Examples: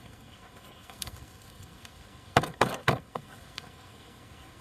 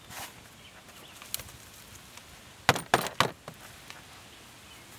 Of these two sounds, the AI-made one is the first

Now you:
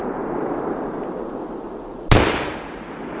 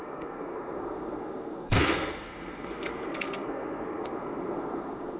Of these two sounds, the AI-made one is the second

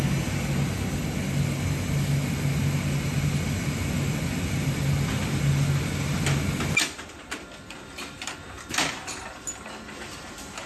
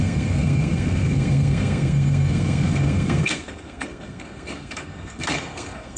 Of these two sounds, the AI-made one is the second